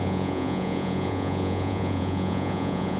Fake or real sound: fake